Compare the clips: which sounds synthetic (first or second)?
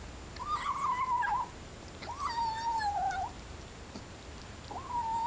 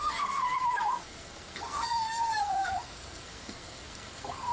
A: second